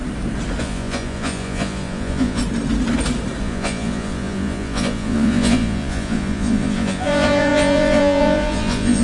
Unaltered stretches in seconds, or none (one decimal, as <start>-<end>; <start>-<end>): 0.0-0.6; 2.4-3.4